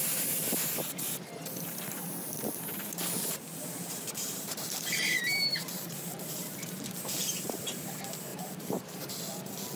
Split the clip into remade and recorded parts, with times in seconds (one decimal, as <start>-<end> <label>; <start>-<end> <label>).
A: 0.0-2.7 recorded; 2.7-7.9 remade; 7.9-8.3 recorded; 8.3-9.2 remade; 9.2-9.8 recorded